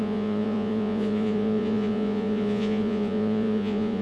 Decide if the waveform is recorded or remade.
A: remade